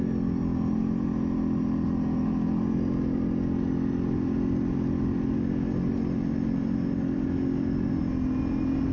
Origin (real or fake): real